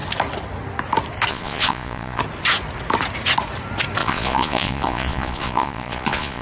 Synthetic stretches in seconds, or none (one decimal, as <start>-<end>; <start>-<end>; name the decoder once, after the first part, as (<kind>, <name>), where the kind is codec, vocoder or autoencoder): 1.3-2.2 (vocoder, Vocos); 4.0-6.4